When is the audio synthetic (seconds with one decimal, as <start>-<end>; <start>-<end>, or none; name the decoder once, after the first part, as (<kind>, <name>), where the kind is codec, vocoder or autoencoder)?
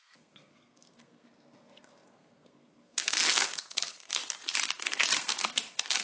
0.0-4.2 (codec, SNAC); 4.8-6.0